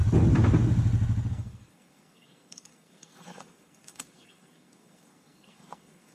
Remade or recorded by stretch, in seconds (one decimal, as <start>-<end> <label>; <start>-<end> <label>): 0.0-1.3 recorded; 1.3-6.1 remade